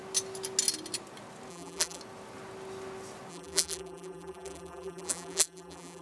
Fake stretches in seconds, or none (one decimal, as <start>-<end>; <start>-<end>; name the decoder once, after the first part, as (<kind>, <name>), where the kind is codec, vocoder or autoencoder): 1.5-2.0 (vocoder, BigVGAN v2); 3.3-6.0